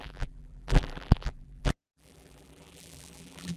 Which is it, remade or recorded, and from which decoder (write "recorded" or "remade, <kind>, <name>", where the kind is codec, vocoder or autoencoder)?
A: remade, vocoder, BigVGAN v2